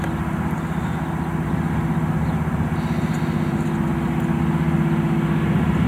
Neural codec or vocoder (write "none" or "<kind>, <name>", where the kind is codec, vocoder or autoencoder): none